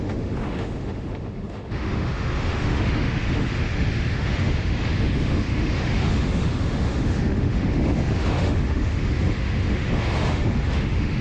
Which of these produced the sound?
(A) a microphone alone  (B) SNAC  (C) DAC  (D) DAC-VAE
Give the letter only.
D